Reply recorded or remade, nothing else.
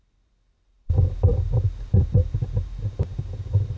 recorded